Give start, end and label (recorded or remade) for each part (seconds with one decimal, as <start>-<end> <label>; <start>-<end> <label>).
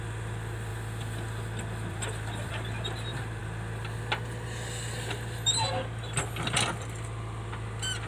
0.0-0.7 remade; 0.7-1.9 recorded; 1.9-3.4 remade; 3.4-6.7 recorded; 6.7-8.1 remade